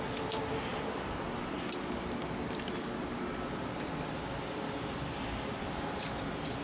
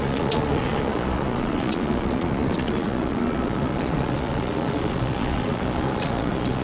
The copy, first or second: second